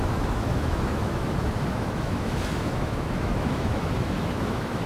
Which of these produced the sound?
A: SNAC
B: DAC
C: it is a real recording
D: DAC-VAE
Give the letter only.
D